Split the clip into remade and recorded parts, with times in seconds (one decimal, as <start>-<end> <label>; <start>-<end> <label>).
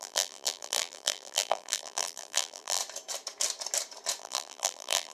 0.0-2.8 remade; 2.8-4.2 recorded; 4.2-5.1 remade